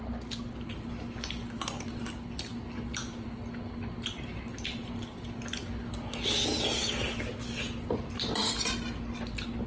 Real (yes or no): yes